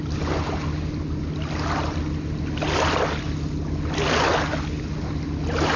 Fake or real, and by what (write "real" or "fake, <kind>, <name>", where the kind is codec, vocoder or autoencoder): real